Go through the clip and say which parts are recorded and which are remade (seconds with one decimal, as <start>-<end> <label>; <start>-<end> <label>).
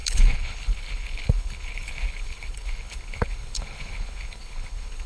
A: 0.0-5.1 remade